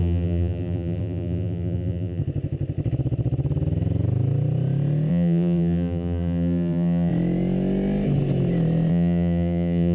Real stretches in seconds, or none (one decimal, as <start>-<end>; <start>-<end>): 2.2-5.1; 7.1-8.9